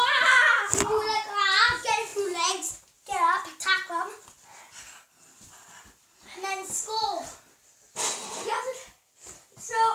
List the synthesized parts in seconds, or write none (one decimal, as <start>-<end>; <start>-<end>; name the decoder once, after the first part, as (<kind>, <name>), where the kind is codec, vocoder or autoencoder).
none